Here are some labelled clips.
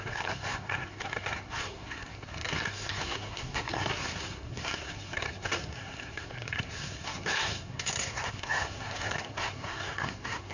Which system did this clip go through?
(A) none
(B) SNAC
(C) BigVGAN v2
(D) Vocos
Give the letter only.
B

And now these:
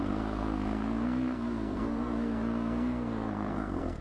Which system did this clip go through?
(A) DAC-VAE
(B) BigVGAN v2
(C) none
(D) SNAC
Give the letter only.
D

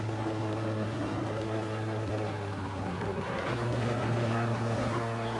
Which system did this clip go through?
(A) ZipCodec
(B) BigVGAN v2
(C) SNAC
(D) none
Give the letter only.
C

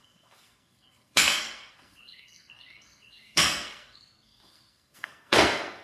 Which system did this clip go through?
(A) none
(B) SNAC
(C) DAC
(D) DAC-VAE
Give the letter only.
B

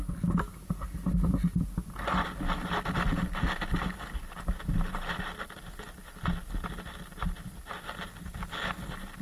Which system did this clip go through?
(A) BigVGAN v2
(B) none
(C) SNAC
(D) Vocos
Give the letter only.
B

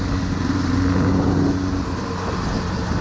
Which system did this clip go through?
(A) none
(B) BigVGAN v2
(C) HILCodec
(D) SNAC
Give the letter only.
A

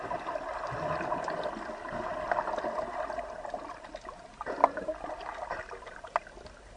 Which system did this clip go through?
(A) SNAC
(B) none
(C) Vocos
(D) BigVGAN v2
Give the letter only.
B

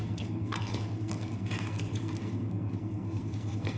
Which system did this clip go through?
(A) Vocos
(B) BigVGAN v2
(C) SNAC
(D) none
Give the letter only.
C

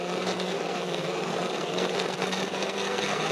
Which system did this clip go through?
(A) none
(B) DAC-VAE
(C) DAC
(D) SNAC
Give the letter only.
D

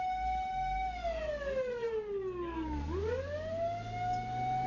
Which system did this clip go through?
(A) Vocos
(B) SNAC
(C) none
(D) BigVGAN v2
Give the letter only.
C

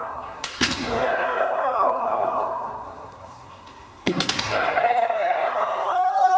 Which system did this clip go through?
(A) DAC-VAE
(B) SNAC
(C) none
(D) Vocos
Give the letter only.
B